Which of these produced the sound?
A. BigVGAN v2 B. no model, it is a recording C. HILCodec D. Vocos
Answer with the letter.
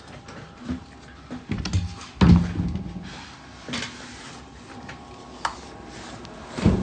B